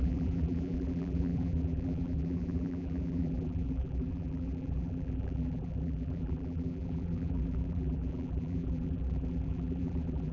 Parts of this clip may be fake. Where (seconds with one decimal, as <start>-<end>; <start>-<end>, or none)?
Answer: 0.0-10.3

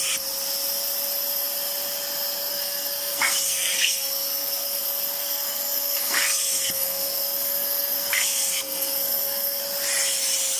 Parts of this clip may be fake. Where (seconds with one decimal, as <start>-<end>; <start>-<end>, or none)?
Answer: 2.5-4.8; 5.2-9.6

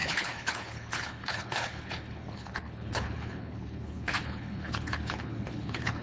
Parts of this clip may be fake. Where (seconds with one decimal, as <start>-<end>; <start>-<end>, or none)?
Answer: 0.0-6.0

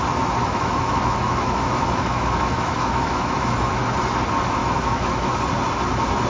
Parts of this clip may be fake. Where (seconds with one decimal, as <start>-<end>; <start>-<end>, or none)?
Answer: 0.4-3.8; 4.6-5.4

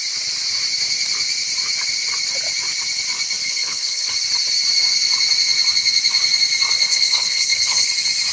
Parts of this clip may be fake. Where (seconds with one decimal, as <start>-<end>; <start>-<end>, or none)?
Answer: 3.4-4.1; 6.9-7.9

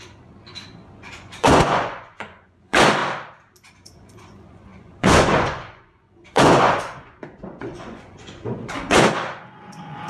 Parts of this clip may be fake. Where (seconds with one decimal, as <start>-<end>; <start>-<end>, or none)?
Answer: 0.0-3.0; 3.7-10.1